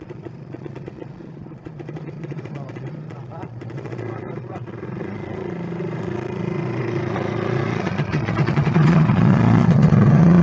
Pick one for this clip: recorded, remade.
remade